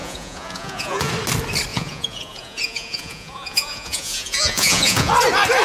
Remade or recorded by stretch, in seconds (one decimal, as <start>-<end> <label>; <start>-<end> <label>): 0.0-1.1 remade; 1.1-1.7 recorded; 1.7-5.1 remade; 5.1-5.6 recorded